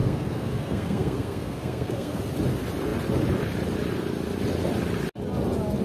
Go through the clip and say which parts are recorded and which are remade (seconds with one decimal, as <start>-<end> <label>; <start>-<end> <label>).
0.0-2.2 remade; 2.2-5.8 recorded